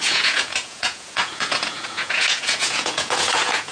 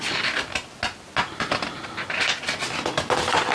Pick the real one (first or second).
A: second